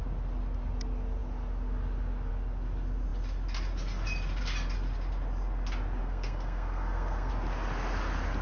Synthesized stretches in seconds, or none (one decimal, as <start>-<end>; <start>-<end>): 6.0-7.3